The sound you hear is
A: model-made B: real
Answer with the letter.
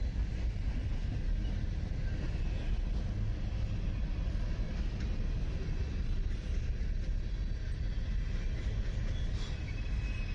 B